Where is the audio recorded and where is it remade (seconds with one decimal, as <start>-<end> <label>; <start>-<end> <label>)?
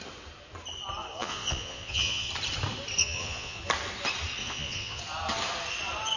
0.0-1.1 recorded; 1.1-2.3 remade; 2.3-3.0 recorded; 3.0-3.6 remade; 3.6-4.4 recorded; 4.4-5.0 remade; 5.0-6.2 recorded